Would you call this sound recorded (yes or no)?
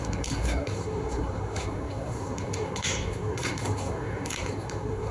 no